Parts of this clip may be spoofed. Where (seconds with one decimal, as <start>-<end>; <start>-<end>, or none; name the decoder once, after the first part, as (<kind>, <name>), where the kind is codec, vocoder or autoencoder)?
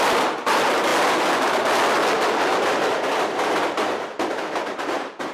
none